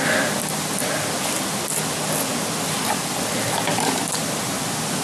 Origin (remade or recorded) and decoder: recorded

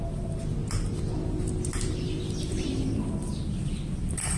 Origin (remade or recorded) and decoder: recorded